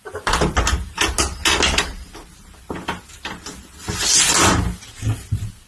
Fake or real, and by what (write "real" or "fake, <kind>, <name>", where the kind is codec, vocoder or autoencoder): real